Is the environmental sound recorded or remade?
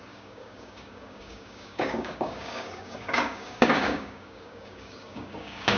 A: remade